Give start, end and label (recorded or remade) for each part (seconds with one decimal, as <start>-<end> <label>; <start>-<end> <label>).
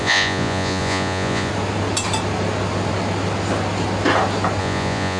0.0-1.5 remade; 1.5-4.6 recorded; 4.6-5.2 remade